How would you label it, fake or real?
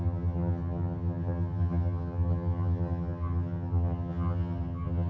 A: fake